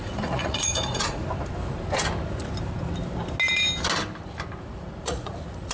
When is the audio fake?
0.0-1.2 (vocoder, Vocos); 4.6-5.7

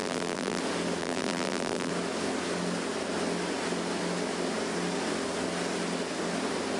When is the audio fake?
0.0-0.6 (vocoder, BigVGAN v2); 1.0-1.9

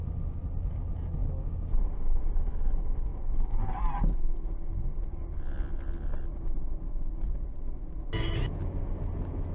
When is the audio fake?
none

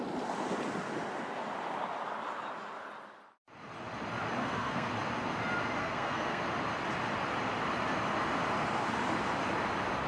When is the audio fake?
4.4-4.9 (codec, SNAC); 5.8-6.4